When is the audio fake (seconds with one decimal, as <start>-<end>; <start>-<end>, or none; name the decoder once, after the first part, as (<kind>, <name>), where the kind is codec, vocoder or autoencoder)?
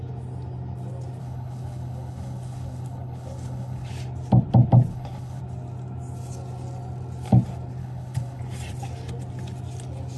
1.2-3.9 (codec, HILCodec); 4.9-5.4; 7.8-8.4